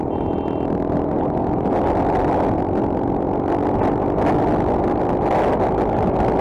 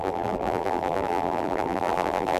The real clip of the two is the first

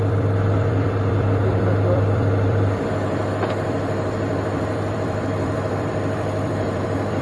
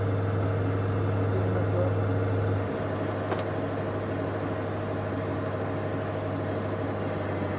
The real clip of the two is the second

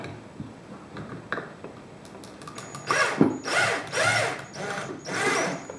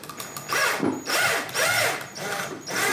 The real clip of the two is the first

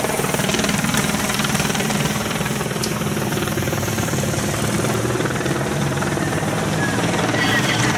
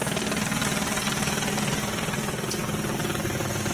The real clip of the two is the second